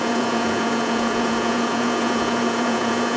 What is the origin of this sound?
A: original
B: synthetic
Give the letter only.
B